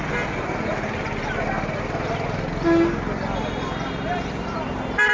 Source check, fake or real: real